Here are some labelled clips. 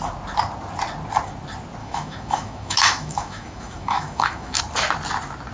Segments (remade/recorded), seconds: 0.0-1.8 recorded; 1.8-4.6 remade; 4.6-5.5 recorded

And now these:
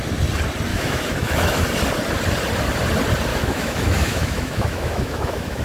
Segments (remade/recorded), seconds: 0.0-0.7 recorded; 0.7-1.6 remade; 1.6-3.3 recorded; 3.3-5.6 remade

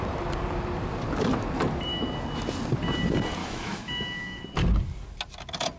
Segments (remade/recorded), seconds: 0.0-3.4 recorded; 3.4-4.4 remade; 4.4-5.8 recorded

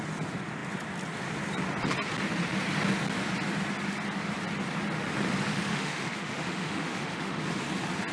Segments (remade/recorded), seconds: 0.0-5.5 recorded; 5.5-7.4 remade; 7.4-8.1 recorded

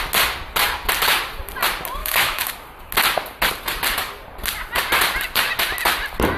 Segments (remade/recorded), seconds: 0.0-2.0 recorded; 2.0-2.5 remade; 2.5-6.4 recorded

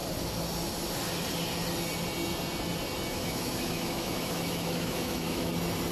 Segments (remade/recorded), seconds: 0.0-3.1 recorded; 3.1-5.5 remade; 5.5-5.9 recorded

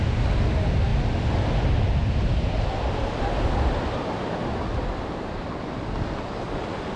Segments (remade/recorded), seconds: 0.0-7.0 recorded

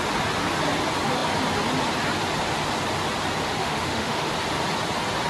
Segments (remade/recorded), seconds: 0.0-3.6 recorded; 3.6-4.3 remade; 4.3-5.3 recorded